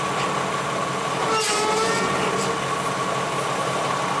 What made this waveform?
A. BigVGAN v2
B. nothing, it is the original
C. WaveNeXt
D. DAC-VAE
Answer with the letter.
B